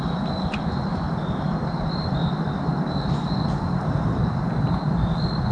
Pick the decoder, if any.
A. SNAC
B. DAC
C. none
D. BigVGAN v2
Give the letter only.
C